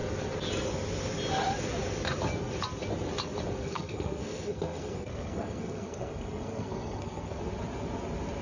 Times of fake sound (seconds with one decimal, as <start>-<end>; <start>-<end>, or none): 3.6-7.4